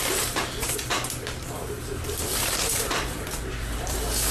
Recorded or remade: remade